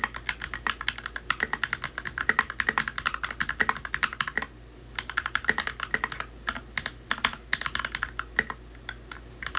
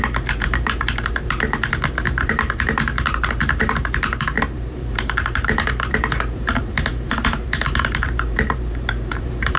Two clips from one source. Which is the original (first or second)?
first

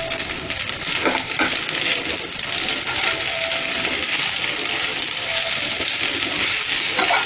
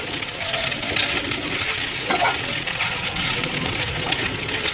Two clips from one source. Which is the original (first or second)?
first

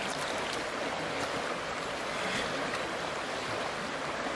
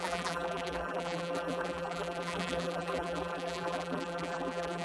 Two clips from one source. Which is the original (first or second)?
first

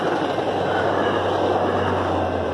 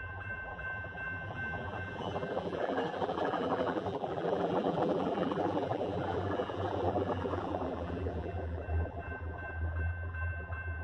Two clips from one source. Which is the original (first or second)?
first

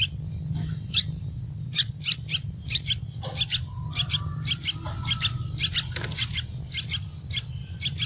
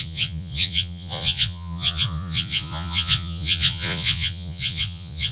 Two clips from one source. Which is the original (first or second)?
first